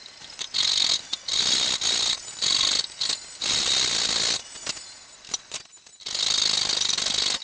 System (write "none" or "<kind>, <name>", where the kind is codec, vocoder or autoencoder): none